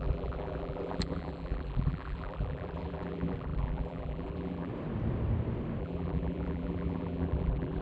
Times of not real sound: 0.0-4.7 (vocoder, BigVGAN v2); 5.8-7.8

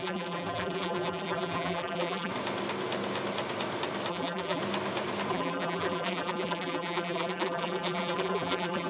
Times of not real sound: 0.0-2.3 (vocoder, BigVGAN v2); 4.1-4.6; 5.3-8.9